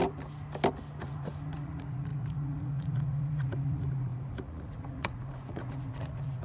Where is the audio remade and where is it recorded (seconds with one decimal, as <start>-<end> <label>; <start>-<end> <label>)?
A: 0.0-1.0 recorded; 1.0-6.4 remade